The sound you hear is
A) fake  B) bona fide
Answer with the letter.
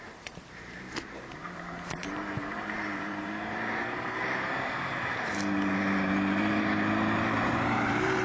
A